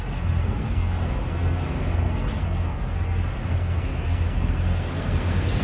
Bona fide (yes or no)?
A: no